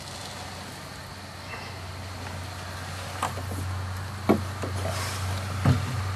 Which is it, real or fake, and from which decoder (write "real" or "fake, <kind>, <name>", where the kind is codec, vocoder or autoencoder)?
real